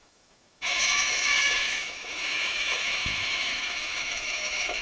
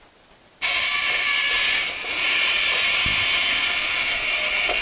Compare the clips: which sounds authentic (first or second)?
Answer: second